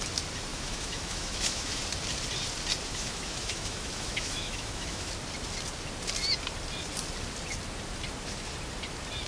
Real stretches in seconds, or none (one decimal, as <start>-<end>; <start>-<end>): 0.0-0.5; 1.8-2.9; 5.1-9.3